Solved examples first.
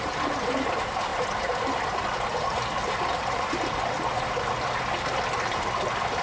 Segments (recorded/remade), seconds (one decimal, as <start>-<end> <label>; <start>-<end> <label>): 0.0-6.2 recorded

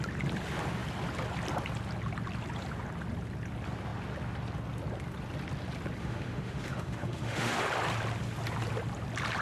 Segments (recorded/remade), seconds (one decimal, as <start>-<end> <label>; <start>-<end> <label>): 0.0-6.0 recorded; 6.0-7.6 remade; 7.6-9.4 recorded

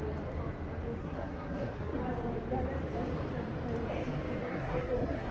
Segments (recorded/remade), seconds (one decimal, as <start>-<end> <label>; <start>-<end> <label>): 0.0-1.0 recorded; 1.0-2.0 remade; 2.0-4.4 recorded; 4.4-5.3 remade